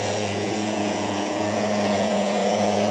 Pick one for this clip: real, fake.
fake